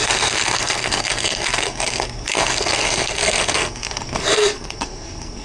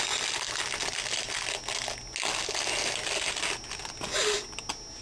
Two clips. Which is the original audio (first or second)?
second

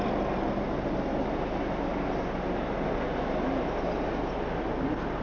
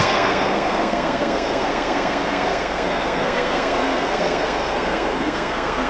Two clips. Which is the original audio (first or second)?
first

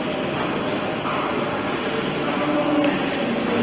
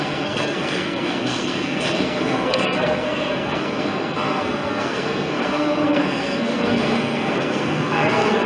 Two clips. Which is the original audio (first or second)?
first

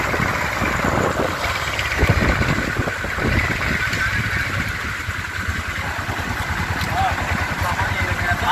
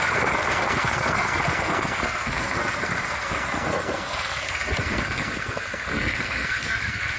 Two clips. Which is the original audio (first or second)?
first